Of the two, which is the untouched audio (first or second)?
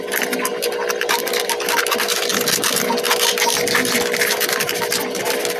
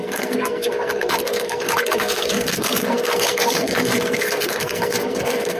first